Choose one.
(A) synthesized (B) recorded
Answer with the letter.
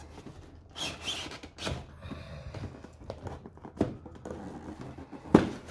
B